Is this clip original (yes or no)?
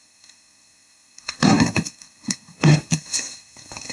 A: no